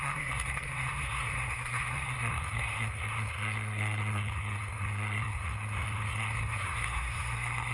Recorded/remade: remade